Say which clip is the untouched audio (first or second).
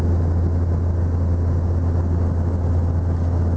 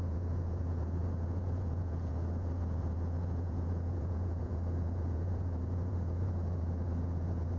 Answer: first